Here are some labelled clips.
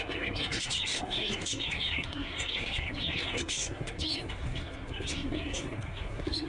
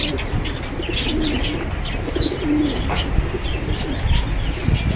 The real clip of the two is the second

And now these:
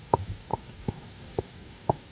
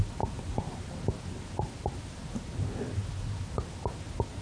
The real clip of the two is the second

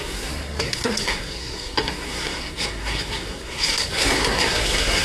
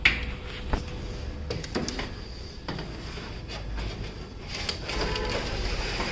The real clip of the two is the second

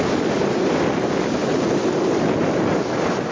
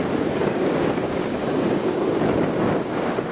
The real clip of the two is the first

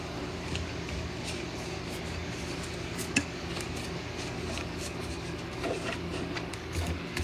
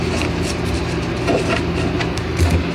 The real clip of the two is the second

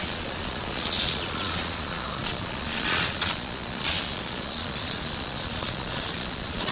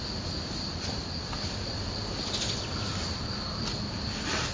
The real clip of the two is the second